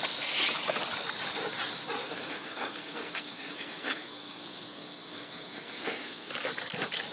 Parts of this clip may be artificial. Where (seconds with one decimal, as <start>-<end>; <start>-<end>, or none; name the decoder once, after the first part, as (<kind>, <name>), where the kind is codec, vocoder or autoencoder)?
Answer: 2.0-6.3 (codec, SNAC)